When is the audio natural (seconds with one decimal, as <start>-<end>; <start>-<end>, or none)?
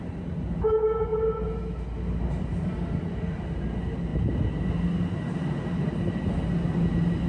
0.0-7.3